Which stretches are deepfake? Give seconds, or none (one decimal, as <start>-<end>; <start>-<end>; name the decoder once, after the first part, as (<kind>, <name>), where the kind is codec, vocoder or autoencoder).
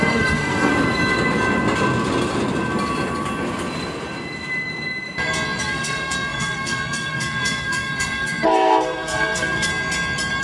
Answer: 0.0-0.7 (codec, SNAC); 5.6-9.7